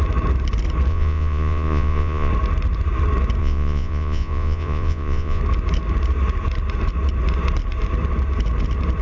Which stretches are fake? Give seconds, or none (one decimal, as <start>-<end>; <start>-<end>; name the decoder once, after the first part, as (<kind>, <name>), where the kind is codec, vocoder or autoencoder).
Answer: 0.9-2.3 (vocoder, Vocos); 3.4-5.4